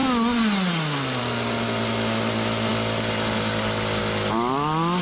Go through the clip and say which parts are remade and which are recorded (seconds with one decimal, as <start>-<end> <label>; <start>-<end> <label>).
0.0-5.0 recorded

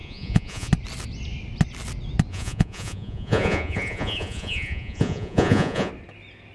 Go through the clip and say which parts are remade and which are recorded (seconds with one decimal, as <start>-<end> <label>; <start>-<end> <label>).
0.0-0.7 remade; 0.7-2.3 recorded; 2.3-5.9 remade; 5.9-6.5 recorded

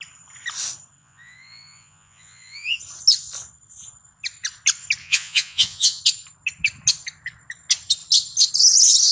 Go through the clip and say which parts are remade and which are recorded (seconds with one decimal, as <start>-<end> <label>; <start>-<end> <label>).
0.0-1.0 recorded; 1.0-2.8 remade; 2.8-5.0 recorded; 5.0-6.0 remade; 6.0-9.1 recorded

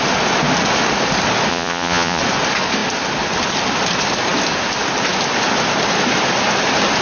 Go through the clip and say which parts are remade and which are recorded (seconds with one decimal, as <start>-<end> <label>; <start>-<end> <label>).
0.0-1.5 recorded; 1.5-2.2 remade; 2.2-7.0 recorded

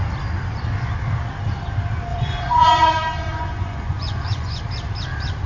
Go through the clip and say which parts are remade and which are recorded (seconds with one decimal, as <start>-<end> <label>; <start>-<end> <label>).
0.0-2.1 recorded; 2.1-4.6 remade; 4.6-5.5 recorded

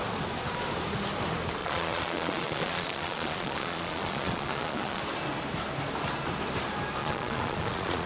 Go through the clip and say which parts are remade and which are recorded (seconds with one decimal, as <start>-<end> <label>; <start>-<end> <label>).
0.0-1.6 recorded; 1.6-5.0 remade; 5.0-7.0 recorded; 7.0-8.1 remade

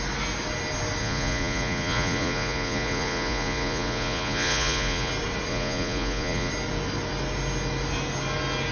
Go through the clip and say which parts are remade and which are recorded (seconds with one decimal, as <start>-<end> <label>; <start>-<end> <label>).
0.0-1.0 recorded; 1.0-5.1 remade; 5.1-5.5 recorded; 5.5-6.5 remade; 6.5-8.7 recorded